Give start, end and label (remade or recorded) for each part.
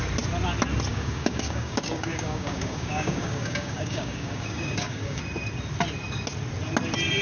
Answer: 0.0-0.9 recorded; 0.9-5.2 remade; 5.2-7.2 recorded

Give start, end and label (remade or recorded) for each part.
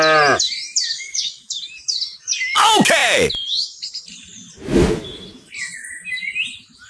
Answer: 0.0-0.9 recorded; 0.9-1.5 remade; 1.5-6.9 recorded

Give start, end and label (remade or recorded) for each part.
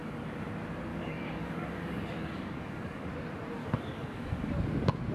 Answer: 0.0-0.5 remade; 0.5-0.9 recorded; 0.9-3.1 remade; 3.1-3.6 recorded; 3.6-4.5 remade; 4.5-5.1 recorded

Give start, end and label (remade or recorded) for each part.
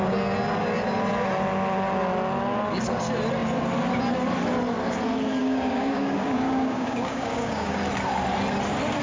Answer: 0.0-5.4 recorded; 5.4-7.8 remade; 7.8-9.0 recorded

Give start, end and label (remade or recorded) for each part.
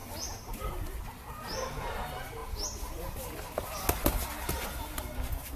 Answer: 0.0-5.6 recorded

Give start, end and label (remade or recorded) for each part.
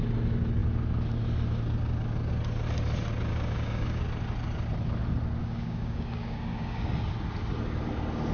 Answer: 0.0-3.3 recorded; 3.3-4.0 remade; 4.0-5.4 recorded; 5.4-6.9 remade; 6.9-8.3 recorded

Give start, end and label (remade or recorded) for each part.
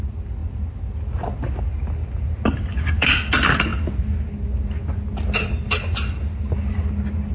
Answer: 0.0-2.7 recorded; 2.7-3.3 remade; 3.3-7.3 recorded